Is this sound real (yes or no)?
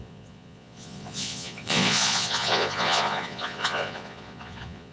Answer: no